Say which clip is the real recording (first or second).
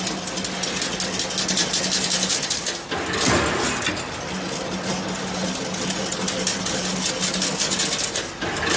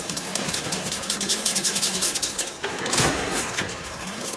first